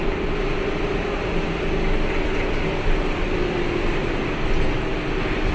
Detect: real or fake real